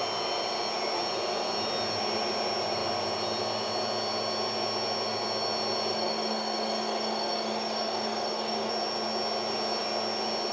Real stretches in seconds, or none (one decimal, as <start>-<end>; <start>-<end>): 0.0-5.9; 8.7-10.5